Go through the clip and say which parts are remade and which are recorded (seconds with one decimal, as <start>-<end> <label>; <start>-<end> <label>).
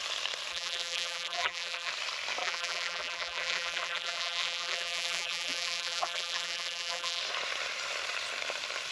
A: 0.0-0.5 recorded; 0.5-1.9 remade; 1.9-2.4 recorded; 2.4-7.2 remade; 7.2-8.9 recorded